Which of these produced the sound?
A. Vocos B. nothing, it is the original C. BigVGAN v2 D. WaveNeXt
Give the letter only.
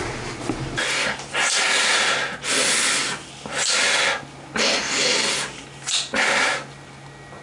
B